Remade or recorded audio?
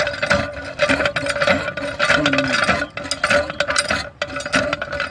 recorded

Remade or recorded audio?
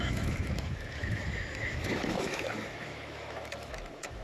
remade